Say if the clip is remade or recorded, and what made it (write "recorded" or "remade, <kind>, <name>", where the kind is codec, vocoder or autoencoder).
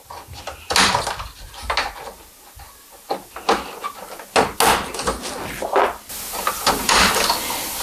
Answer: recorded